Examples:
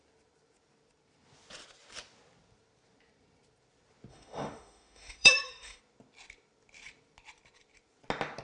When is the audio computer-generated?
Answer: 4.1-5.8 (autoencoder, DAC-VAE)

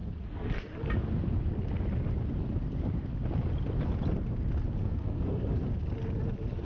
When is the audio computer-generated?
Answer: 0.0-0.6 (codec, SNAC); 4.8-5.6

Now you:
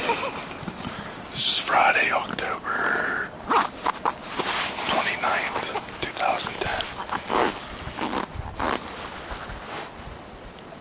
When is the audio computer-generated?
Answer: none

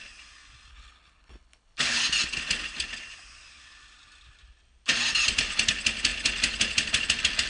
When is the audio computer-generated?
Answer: 0.7-2.0 (codec, HILCodec)

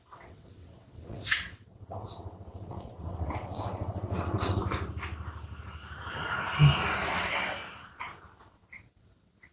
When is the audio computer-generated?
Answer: 0.0-4.6 (vocoder, WaveNeXt); 7.1-7.6; 8.4-9.5

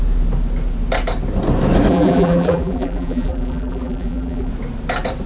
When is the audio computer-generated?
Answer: 1.9-4.5 (vocoder, BigVGAN v2)

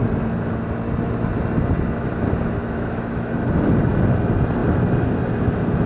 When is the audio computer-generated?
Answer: 2.6-3.3 (autoencoder, DAC-VAE)

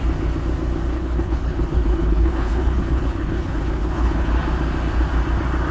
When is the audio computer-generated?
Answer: 0.9-4.3 (codec, HILCodec)